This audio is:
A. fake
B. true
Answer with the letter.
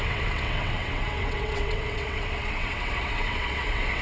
A